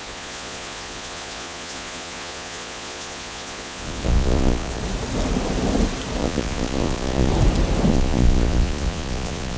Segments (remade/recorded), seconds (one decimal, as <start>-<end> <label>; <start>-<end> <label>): 0.0-4.8 remade; 4.8-6.2 recorded; 6.2-7.3 remade; 7.3-7.9 recorded; 7.9-9.6 remade